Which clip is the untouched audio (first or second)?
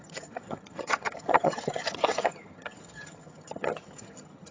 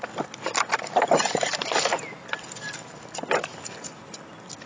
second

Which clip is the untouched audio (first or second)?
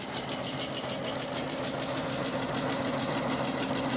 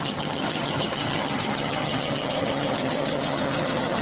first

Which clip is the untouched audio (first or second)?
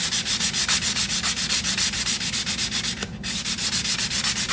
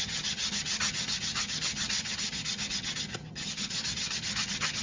first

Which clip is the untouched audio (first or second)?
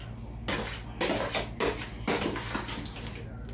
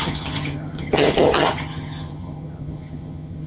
first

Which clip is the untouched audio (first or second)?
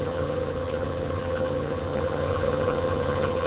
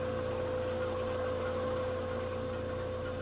second